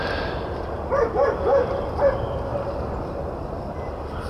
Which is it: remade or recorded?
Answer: recorded